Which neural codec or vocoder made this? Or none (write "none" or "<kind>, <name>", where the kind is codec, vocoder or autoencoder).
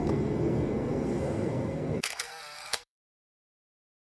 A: codec, SNAC